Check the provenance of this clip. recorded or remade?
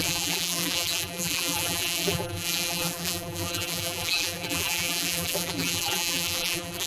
remade